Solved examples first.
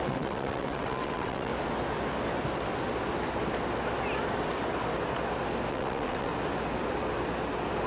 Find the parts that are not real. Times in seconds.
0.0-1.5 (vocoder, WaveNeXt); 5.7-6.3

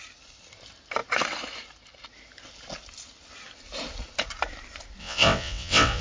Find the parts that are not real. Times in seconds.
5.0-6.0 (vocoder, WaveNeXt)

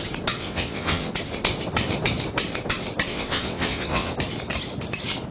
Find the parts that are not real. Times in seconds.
0.4-1.1 (vocoder, WaveNeXt); 3.1-4.1